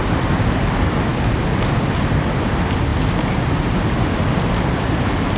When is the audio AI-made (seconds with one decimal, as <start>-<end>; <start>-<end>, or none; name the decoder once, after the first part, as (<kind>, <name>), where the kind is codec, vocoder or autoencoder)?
none